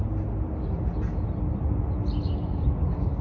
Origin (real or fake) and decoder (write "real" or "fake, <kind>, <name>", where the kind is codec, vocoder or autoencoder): real